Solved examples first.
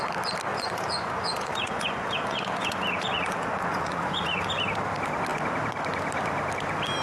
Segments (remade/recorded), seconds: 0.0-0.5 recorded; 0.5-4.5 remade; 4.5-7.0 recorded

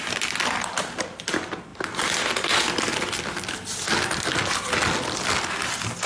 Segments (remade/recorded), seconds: 0.0-6.1 recorded